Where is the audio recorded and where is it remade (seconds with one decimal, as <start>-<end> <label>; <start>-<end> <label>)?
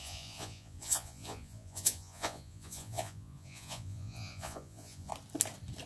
0.0-5.1 remade; 5.1-5.9 recorded